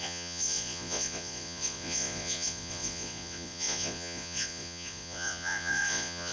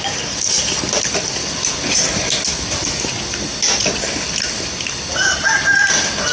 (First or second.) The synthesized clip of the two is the first